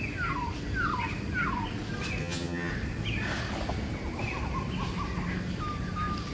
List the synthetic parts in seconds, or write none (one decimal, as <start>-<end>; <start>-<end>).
2.2-2.7